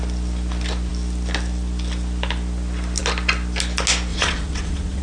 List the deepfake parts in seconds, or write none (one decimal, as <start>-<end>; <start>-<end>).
4.1-5.0